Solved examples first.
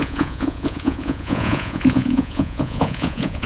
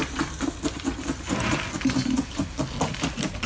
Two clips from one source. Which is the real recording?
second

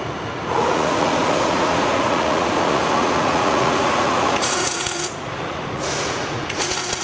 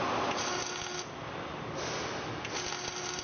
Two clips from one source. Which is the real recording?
second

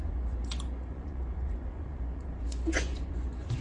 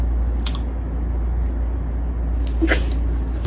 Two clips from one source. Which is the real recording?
second